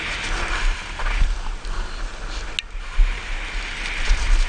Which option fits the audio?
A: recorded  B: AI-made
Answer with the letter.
A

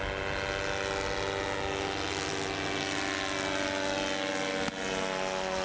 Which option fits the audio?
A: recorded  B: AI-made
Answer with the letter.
A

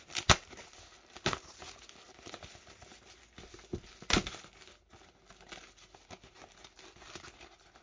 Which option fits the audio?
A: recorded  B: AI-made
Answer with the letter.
A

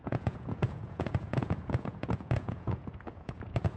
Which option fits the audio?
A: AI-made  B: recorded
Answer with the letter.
A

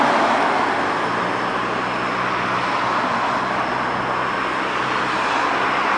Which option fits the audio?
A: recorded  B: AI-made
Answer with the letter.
A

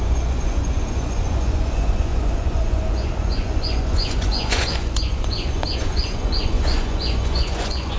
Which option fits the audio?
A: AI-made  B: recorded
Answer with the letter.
A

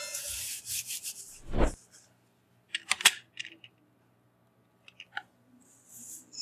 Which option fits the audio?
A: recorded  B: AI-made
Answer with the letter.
A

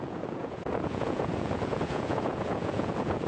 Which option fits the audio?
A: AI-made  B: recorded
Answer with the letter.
A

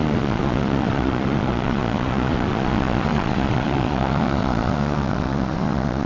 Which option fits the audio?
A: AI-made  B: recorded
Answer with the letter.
A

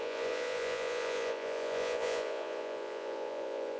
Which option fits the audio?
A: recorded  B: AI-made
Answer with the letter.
B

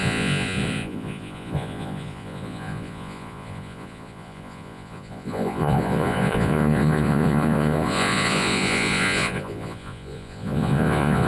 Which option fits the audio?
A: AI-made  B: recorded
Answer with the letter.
A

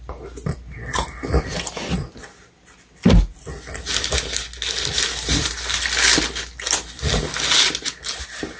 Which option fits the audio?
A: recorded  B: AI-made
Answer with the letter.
A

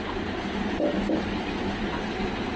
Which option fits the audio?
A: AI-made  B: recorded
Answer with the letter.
B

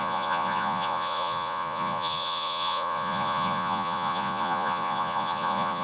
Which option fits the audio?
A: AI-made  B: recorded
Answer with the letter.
A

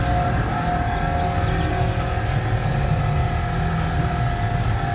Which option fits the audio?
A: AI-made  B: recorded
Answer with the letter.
B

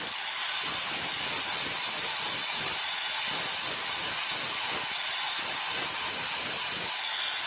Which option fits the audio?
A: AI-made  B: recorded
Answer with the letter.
B